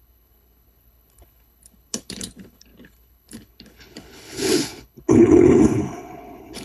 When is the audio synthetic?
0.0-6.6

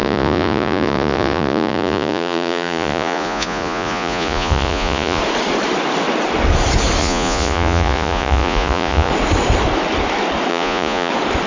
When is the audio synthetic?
0.0-5.2; 7.0-9.1; 10.5-11.1

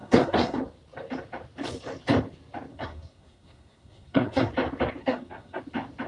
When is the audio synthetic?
0.0-0.6; 2.7-4.5; 5.0-5.6

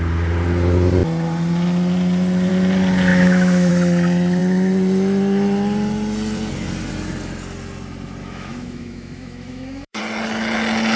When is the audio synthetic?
3.1-3.7; 8.2-10.0